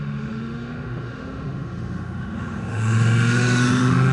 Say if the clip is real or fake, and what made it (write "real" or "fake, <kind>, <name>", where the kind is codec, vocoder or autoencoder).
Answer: fake, autoencoder, DAC-VAE